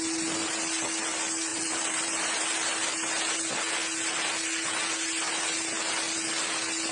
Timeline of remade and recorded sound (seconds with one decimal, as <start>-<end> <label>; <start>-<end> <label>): 0.0-1.5 recorded; 1.5-2.4 remade; 2.4-6.9 recorded